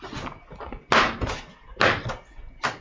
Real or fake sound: real